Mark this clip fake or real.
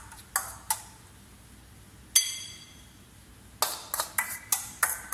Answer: real